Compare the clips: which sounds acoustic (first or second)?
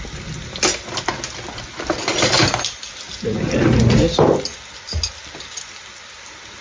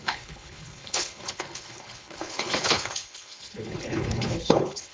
first